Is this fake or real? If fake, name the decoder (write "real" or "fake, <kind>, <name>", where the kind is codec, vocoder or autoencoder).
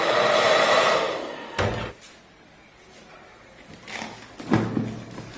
real